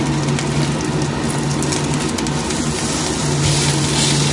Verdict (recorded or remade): recorded